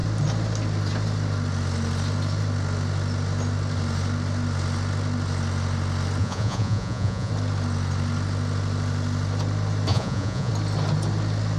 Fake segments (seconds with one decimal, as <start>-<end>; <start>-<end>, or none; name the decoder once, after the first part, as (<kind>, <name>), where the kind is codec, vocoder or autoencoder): 6.2-7.3 (vocoder, Vocos); 9.9-10.5